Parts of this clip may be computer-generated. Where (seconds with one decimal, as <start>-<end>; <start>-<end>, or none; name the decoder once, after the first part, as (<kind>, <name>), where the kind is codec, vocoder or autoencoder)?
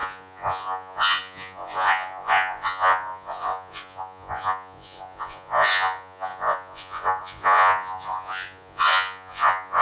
0.0-9.8 (vocoder, Vocos)